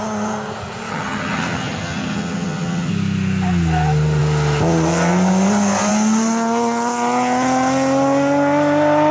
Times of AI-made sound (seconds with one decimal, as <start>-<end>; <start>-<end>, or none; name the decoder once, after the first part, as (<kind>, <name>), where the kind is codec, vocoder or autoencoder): 0.9-2.9 (vocoder, HiFi-GAN)